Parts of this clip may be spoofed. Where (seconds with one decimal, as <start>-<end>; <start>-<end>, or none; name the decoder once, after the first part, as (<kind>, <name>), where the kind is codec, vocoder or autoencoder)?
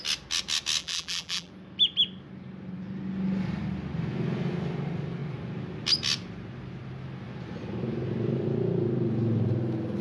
0.8-1.5 (vocoder, BigVGAN v2)